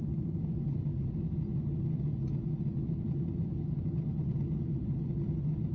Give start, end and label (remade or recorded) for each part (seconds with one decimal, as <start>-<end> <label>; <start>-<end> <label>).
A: 0.0-5.7 recorded